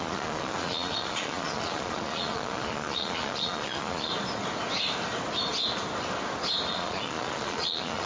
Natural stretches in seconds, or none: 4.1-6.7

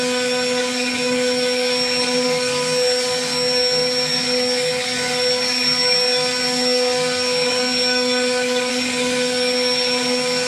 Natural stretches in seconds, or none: none

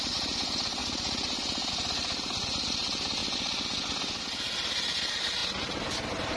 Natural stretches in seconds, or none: 0.0-6.4

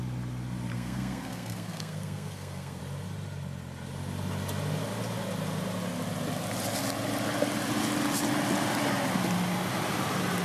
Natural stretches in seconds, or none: 0.0-0.7; 2.8-10.4

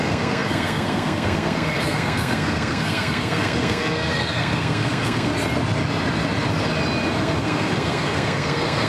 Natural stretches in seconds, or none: 5.3-7.2

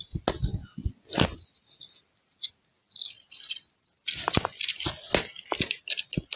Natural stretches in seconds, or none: 0.0-6.4